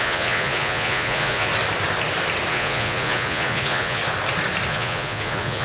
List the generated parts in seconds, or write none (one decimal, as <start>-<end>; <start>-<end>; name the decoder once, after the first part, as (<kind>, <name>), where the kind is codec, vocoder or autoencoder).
0.0-1.5 (vocoder, Vocos); 2.5-4.0; 4.7-5.6